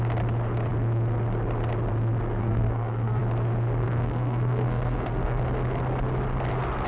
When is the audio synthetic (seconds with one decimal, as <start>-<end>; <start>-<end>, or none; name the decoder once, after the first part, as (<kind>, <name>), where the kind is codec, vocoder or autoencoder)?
2.4-3.2 (codec, SNAC); 3.8-5.4